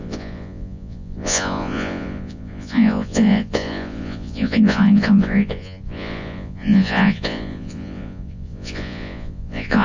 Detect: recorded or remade remade